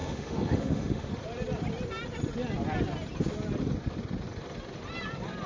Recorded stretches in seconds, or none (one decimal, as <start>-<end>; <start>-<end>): 1.1-5.5